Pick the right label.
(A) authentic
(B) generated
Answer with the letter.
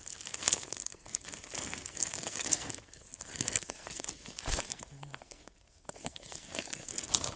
B